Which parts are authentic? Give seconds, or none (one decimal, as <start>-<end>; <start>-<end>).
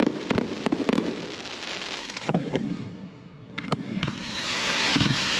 0.0-2.0